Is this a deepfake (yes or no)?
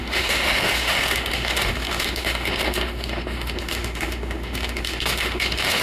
yes